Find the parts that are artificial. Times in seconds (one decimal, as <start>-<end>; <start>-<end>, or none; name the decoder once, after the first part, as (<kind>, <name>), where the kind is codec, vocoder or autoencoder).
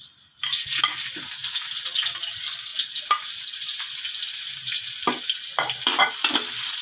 none